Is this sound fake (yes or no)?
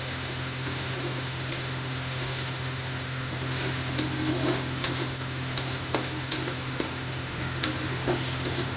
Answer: yes